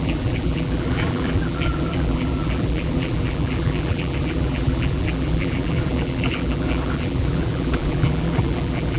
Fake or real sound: fake